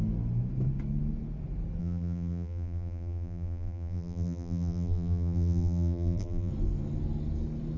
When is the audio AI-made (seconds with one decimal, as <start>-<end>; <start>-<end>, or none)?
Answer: 1.8-6.5